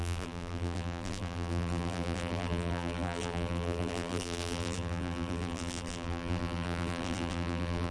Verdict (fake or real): fake